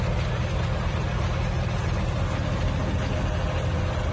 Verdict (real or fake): real